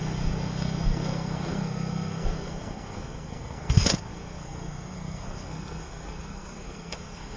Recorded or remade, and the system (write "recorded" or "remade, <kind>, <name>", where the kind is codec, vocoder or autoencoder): remade, codec, SNAC